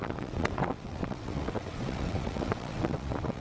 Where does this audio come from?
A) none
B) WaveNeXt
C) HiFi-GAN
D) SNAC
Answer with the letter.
B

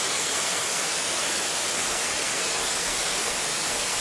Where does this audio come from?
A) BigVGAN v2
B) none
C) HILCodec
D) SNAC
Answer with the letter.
D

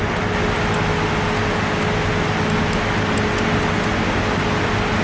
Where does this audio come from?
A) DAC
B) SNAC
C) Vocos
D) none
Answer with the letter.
D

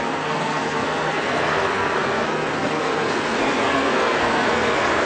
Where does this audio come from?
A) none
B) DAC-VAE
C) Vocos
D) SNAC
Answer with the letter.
D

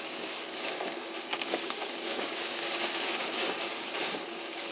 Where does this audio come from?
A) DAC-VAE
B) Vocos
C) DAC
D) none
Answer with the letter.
C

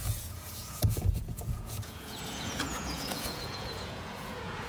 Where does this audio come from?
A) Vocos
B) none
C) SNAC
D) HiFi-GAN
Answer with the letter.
A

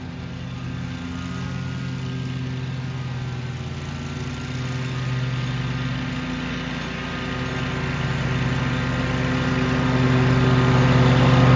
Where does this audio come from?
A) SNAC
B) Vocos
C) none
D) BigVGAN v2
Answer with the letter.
C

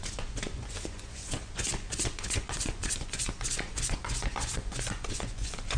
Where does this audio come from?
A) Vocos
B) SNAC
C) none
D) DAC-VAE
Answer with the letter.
A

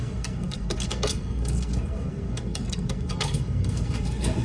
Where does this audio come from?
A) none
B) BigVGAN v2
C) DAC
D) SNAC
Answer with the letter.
D